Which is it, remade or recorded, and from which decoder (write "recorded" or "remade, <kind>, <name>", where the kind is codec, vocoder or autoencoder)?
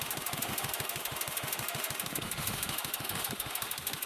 remade, autoencoder, DAC-VAE